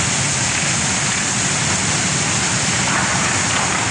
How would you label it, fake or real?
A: real